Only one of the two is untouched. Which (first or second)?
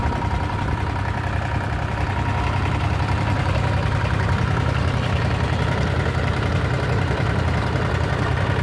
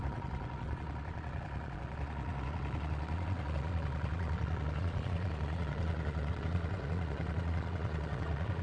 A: first